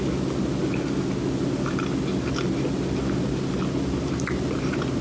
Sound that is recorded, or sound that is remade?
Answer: recorded